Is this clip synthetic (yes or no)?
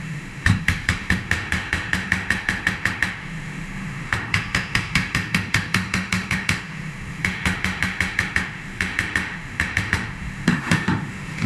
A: yes